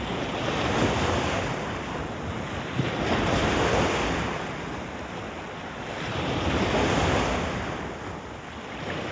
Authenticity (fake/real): real